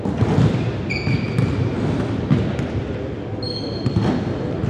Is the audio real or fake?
real